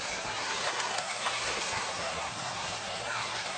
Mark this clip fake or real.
fake